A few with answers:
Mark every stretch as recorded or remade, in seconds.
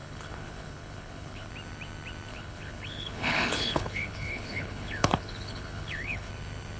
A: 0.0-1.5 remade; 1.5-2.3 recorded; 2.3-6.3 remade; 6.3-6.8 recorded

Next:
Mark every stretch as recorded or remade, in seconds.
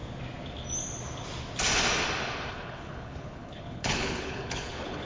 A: 0.0-2.5 recorded; 2.5-5.1 remade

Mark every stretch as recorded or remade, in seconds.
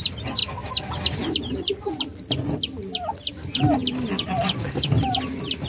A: 0.0-5.7 recorded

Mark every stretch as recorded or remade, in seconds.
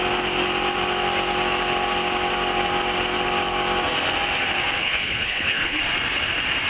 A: 0.0-4.8 recorded; 4.8-5.8 remade; 5.8-6.7 recorded